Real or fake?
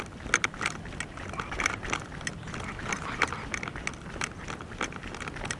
real